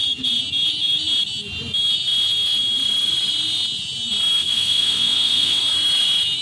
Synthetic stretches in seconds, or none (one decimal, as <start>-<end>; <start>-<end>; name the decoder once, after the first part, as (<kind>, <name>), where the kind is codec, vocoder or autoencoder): 4.4-5.6 (vocoder, WaveNeXt)